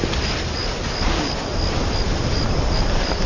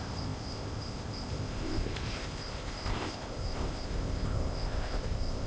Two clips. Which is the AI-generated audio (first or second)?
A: second